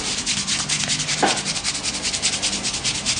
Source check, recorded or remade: recorded